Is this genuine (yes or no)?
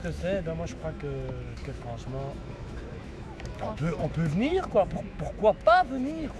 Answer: no